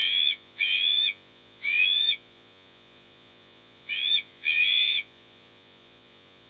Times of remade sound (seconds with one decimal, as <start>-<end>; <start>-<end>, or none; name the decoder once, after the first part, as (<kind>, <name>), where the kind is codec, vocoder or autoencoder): 0.0-6.5 (vocoder, Vocos)